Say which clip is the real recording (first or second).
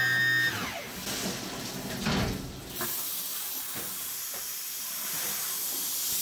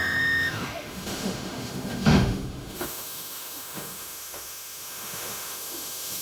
first